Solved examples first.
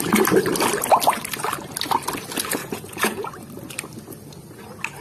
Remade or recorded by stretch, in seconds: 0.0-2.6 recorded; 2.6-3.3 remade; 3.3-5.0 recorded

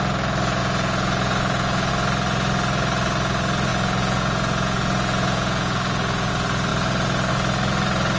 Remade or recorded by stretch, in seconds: 0.0-0.6 recorded; 0.6-1.9 remade; 1.9-3.7 recorded; 3.7-6.3 remade; 6.3-8.2 recorded

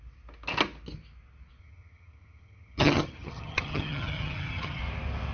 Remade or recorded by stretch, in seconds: 0.0-1.6 recorded; 1.6-4.8 remade; 4.8-5.3 recorded